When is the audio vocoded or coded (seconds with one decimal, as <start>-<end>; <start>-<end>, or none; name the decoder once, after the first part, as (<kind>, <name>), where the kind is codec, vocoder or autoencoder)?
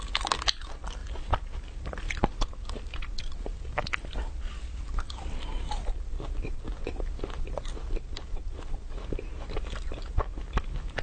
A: none